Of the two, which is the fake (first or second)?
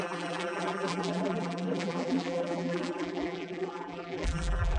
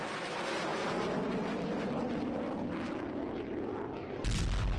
first